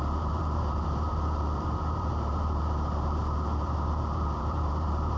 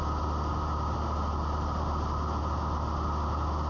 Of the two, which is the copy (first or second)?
first